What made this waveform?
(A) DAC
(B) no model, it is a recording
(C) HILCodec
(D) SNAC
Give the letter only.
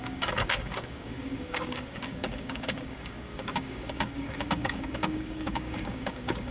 A